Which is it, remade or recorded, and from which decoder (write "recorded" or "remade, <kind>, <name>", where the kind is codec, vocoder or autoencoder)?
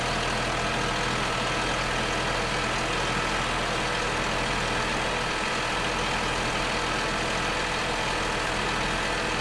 recorded